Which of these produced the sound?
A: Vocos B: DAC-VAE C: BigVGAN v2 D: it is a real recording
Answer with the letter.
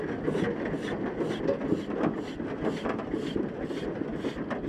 D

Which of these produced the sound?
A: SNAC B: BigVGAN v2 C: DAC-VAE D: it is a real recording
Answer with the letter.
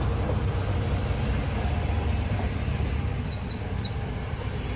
D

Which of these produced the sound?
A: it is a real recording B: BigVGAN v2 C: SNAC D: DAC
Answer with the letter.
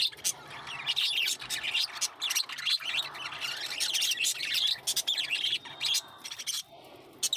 A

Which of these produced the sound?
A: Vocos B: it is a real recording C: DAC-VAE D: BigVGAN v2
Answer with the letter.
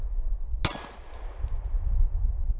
B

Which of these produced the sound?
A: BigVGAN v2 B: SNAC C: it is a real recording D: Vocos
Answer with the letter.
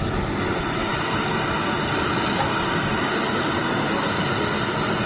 C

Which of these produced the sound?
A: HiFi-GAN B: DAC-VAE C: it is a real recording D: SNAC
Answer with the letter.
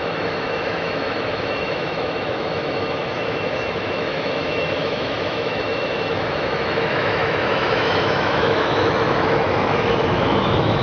B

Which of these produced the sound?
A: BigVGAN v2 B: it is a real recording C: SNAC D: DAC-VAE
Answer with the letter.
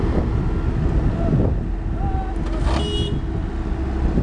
B